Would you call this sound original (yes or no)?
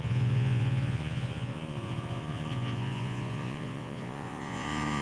no